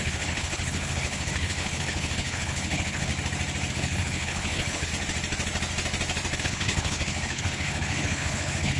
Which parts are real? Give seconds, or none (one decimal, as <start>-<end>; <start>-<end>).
3.1-3.7; 4.9-6.4